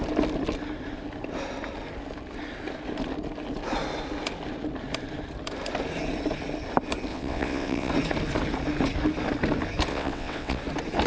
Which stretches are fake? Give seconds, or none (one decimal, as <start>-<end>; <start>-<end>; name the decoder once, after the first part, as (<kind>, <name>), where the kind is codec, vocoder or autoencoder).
7.1-7.9 (vocoder, WaveNeXt); 9.9-10.6